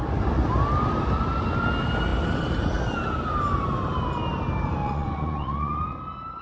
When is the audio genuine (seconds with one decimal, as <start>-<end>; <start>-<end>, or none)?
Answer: 0.0-4.8; 6.0-6.4

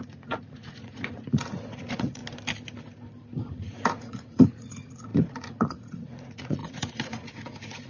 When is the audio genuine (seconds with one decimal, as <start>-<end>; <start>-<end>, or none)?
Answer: 2.2-3.5

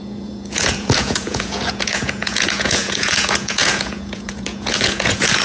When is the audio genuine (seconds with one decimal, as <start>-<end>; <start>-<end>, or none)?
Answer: none

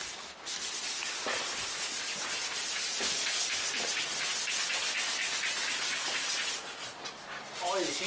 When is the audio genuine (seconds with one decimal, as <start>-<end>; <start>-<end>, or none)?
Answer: 0.0-8.1

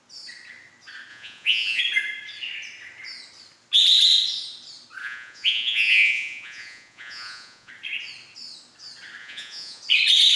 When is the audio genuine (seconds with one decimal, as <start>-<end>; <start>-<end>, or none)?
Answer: 0.0-1.1; 1.8-5.0; 7.7-9.2; 9.8-10.4